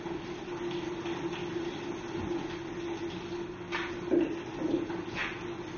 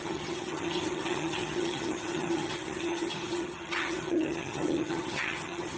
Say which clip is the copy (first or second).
second